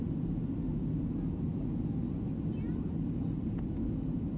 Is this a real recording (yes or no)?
yes